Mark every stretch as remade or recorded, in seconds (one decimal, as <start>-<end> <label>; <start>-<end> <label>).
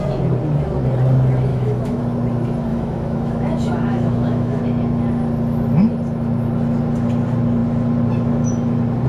0.0-1.5 recorded; 1.5-2.0 remade; 2.0-2.7 recorded; 2.7-4.6 remade; 4.6-9.1 recorded